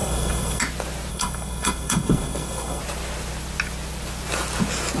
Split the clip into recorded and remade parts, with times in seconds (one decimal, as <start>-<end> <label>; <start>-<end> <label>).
0.0-0.6 remade; 0.6-1.1 recorded; 1.1-2.8 remade; 2.8-5.0 recorded